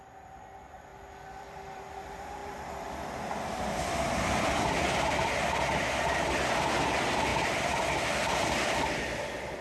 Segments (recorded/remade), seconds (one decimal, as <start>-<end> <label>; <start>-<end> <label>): 0.0-0.9 recorded; 0.9-1.8 remade; 1.8-2.4 recorded; 2.4-5.3 remade; 5.3-7.3 recorded; 7.3-8.8 remade; 8.8-9.6 recorded